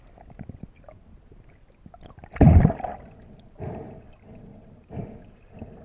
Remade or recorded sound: recorded